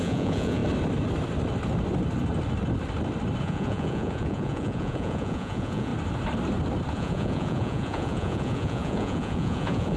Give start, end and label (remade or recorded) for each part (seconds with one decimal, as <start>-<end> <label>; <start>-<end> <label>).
0.0-0.6 remade; 0.6-3.4 recorded; 3.4-5.9 remade; 5.9-6.9 recorded; 6.9-10.0 remade